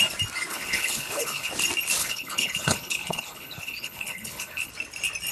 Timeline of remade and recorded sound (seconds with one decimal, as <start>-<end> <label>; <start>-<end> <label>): 0.0-0.5 recorded; 0.5-1.5 remade; 1.5-2.0 recorded; 2.0-4.7 remade; 4.7-5.3 recorded